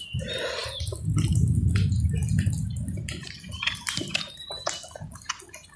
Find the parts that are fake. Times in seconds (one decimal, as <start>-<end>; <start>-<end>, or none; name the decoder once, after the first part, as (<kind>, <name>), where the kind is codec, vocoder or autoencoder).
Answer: none